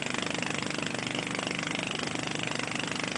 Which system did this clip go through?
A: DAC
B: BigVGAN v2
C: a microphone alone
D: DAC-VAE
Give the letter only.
C